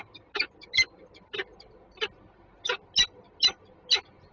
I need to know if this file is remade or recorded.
recorded